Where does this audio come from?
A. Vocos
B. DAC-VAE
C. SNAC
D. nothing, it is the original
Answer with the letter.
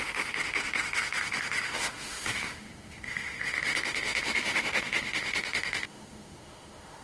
B